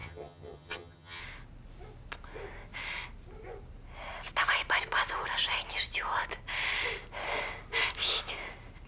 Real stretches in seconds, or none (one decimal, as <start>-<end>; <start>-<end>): 1.2-8.9